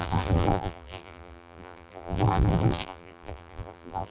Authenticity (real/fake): fake